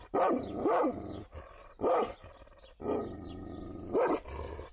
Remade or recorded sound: recorded